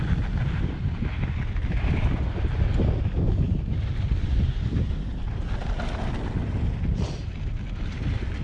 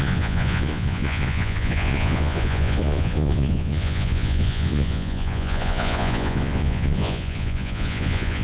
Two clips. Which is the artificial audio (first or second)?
second